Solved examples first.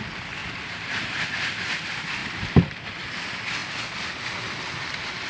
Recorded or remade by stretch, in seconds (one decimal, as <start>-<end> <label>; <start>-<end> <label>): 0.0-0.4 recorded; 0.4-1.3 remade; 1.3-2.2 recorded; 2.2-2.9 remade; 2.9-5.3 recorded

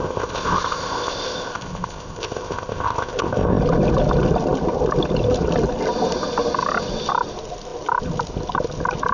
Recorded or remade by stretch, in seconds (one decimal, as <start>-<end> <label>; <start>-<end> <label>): 0.0-3.6 remade; 3.6-9.1 recorded

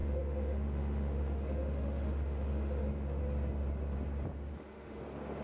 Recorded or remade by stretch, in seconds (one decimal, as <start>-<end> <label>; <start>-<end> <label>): 0.0-3.2 remade; 3.2-4.5 recorded; 4.5-5.0 remade; 5.0-5.4 recorded

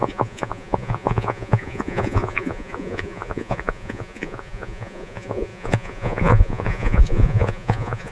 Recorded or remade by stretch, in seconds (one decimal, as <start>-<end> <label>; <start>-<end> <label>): 0.0-8.1 remade

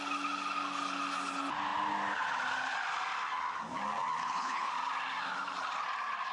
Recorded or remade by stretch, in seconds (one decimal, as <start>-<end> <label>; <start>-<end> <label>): 0.0-4.2 recorded; 4.2-4.7 remade; 4.7-6.3 recorded

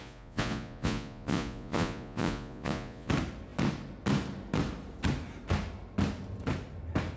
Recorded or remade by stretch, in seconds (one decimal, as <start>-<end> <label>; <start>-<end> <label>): 0.0-3.1 remade; 3.1-7.2 recorded